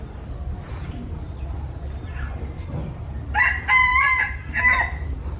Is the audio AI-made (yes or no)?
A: no